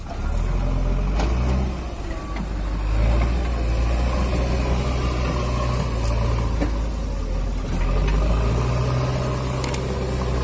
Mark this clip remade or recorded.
recorded